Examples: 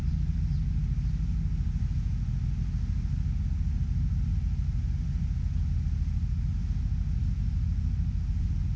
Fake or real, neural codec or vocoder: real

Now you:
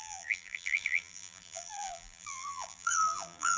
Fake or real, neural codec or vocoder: fake, vocoder, BigVGAN v2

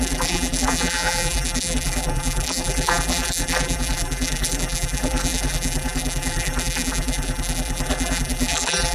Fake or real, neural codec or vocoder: fake, vocoder, BigVGAN v2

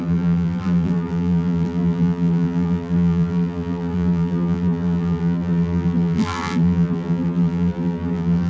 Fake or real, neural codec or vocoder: fake, vocoder, BigVGAN v2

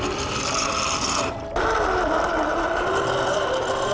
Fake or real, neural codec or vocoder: fake, vocoder, BigVGAN v2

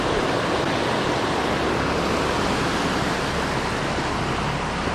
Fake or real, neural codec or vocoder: real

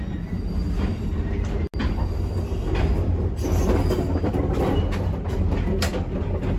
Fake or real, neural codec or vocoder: real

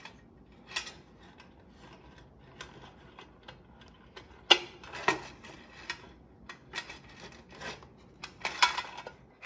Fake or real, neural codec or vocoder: real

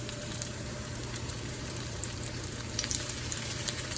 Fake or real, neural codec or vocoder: fake, vocoder, BigVGAN v2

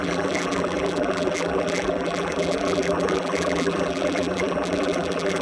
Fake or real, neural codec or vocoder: fake, vocoder, BigVGAN v2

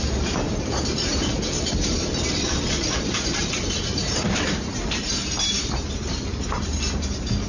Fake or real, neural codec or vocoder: fake, vocoder, BigVGAN v2